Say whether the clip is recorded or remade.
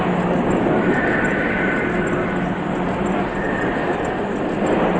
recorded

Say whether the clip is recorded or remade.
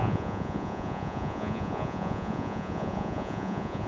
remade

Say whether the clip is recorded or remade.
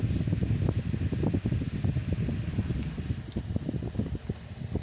recorded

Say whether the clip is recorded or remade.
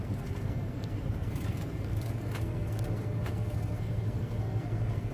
remade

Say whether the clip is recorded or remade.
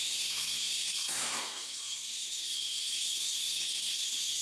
remade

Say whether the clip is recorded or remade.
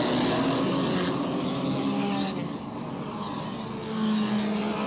recorded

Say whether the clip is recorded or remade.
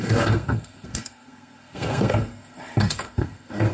remade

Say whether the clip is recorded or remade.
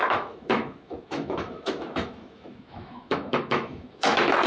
remade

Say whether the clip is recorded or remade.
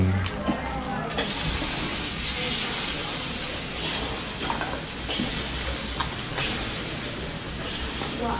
recorded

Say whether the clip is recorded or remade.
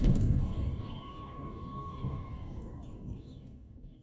remade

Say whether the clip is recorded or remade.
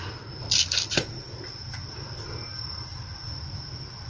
recorded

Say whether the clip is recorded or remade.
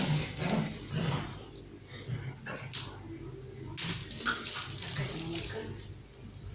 recorded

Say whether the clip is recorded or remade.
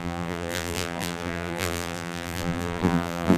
remade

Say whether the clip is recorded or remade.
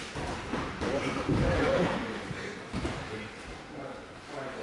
remade